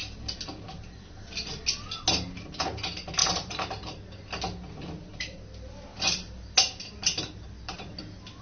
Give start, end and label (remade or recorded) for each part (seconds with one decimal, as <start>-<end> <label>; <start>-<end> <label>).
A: 0.0-3.2 recorded; 3.2-3.9 remade; 3.9-8.4 recorded